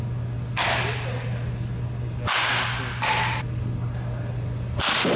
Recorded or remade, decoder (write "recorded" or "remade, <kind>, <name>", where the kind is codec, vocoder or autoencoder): recorded